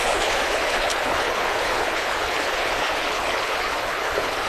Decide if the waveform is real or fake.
fake